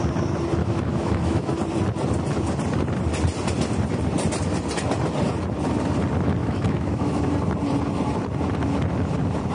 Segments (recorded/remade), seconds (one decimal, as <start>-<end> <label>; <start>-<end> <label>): 0.0-0.6 recorded; 0.6-1.5 remade; 1.5-6.4 recorded; 6.4-7.2 remade; 7.2-9.5 recorded